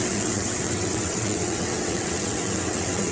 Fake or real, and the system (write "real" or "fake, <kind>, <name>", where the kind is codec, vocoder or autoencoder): fake, vocoder, WaveNeXt